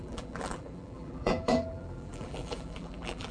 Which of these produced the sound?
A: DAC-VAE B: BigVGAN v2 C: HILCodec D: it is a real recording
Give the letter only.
B